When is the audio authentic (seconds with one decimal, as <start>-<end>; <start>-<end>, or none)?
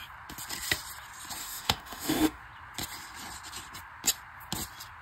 0.0-1.4; 2.4-5.0